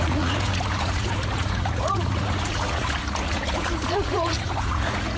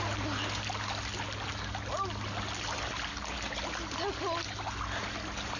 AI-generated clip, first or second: first